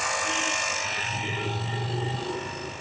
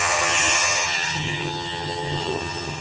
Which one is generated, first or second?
second